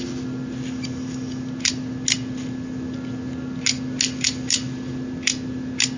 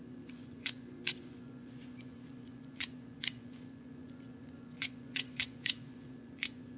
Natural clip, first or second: first